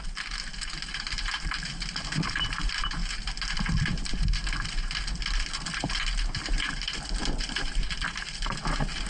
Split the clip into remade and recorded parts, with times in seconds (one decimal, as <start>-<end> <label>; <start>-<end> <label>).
0.0-9.1 recorded